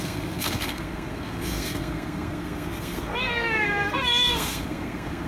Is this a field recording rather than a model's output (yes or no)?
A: no